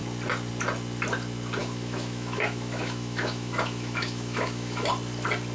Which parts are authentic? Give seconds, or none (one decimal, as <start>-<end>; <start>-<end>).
0.0-1.6; 4.9-5.5